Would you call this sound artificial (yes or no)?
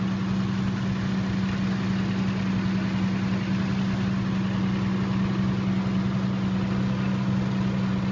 no